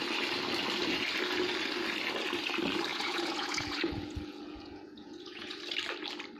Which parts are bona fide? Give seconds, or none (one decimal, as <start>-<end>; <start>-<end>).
0.0-2.9; 5.6-6.4